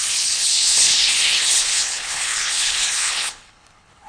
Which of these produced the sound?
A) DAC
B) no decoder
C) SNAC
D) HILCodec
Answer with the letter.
D